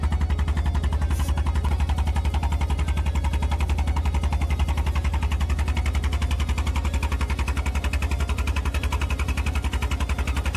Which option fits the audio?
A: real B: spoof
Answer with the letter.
A